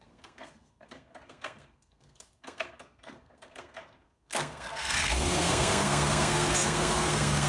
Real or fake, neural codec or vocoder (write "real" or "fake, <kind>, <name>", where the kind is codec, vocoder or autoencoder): fake, codec, SNAC